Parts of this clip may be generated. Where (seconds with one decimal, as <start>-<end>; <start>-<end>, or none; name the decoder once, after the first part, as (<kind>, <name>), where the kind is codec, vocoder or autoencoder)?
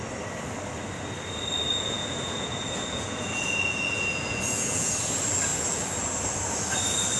1.7-4.9 (vocoder, Vocos)